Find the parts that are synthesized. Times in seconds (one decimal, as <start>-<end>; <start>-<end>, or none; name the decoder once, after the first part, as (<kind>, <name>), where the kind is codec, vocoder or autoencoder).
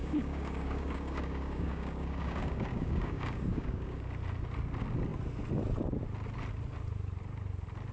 0.0-4.0 (codec, DAC)